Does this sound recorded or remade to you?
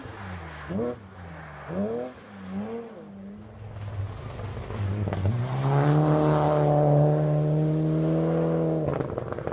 recorded